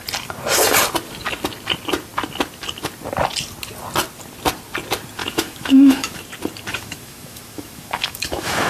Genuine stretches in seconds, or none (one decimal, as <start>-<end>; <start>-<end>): 0.0-5.2; 6.2-6.7